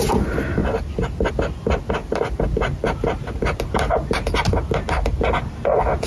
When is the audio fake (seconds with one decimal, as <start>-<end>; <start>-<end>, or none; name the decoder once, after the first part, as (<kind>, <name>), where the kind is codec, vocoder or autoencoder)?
0.6-1.3 (vocoder, BigVGAN v2); 2.0-4.3